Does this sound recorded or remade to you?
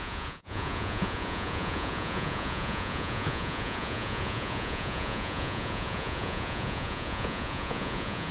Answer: remade